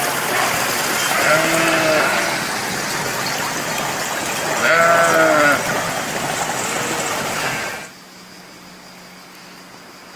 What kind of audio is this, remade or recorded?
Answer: recorded